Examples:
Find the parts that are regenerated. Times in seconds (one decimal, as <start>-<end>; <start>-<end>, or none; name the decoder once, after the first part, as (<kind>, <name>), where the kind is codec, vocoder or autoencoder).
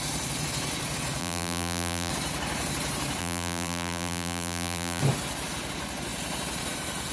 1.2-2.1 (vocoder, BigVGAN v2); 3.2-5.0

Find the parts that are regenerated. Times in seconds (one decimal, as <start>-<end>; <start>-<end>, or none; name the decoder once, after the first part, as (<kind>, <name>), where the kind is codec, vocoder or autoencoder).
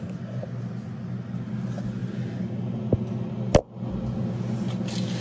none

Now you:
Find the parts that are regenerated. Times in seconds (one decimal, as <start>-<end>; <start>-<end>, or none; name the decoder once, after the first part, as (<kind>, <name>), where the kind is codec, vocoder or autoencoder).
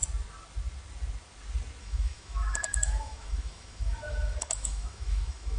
1.8-5.6 (autoencoder, DAC-VAE)